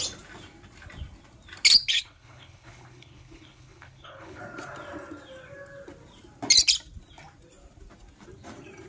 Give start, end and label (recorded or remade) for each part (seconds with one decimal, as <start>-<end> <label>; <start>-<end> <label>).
0.0-1.9 recorded; 1.9-4.4 remade; 4.4-8.9 recorded